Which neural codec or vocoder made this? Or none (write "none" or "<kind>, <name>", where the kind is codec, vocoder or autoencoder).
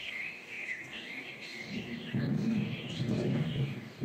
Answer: codec, DAC